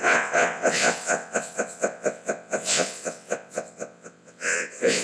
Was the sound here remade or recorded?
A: remade